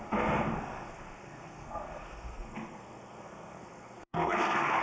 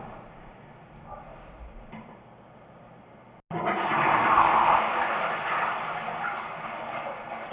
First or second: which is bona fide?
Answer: second